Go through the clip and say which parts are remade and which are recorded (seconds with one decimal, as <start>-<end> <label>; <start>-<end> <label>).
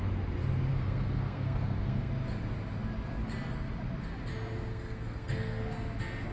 0.0-0.7 recorded; 0.7-2.1 remade; 2.1-4.7 recorded; 4.7-5.6 remade; 5.6-6.3 recorded